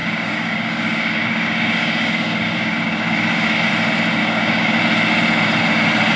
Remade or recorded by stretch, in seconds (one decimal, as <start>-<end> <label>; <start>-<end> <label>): 0.0-3.7 remade; 3.7-4.2 recorded; 4.2-4.8 remade; 4.8-6.2 recorded